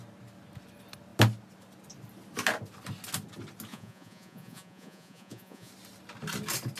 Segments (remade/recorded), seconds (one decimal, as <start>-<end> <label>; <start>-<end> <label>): 0.0-3.7 recorded; 3.7-5.7 remade; 5.7-6.8 recorded